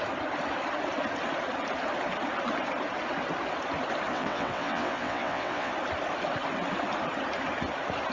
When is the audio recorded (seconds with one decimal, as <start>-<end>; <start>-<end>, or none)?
0.0-4.1; 5.7-8.1